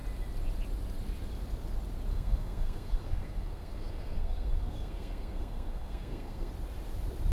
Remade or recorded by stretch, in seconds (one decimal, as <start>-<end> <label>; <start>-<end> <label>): 0.0-2.1 recorded; 2.1-6.5 remade; 6.5-7.3 recorded